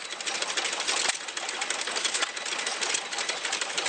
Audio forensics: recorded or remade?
recorded